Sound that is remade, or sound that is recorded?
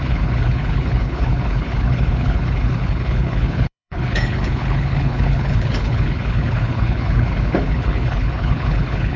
remade